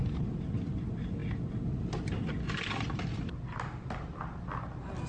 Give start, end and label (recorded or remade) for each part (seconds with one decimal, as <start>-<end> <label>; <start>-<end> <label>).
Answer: 0.0-5.1 recorded